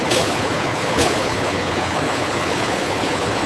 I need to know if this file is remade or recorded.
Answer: remade